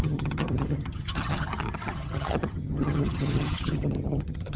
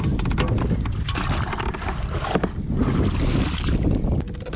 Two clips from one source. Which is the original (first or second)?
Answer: second